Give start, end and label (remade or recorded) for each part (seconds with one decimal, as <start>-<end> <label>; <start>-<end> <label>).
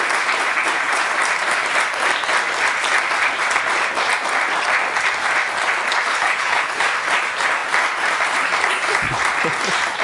0.0-6.1 recorded; 6.1-6.8 remade; 6.8-10.0 recorded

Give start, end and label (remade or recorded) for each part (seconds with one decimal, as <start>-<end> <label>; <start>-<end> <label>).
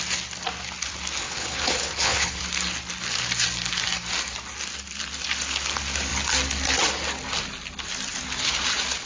0.0-1.2 recorded; 1.2-2.4 remade; 2.4-9.1 recorded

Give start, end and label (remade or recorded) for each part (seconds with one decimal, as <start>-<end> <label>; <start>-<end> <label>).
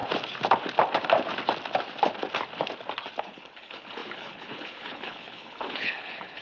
0.0-3.2 recorded; 3.2-6.4 remade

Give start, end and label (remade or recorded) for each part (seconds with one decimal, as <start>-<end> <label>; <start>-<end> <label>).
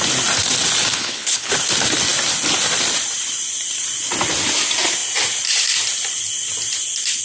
0.0-0.9 recorded; 0.9-1.5 remade; 1.5-7.2 recorded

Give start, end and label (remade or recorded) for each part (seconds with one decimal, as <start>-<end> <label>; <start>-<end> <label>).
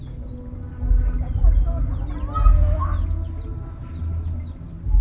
0.0-5.0 recorded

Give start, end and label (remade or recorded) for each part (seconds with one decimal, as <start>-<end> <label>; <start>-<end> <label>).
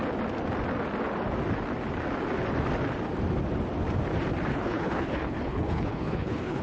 0.0-4.5 recorded; 4.5-6.6 remade